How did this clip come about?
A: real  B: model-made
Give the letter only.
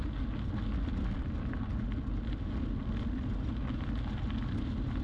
A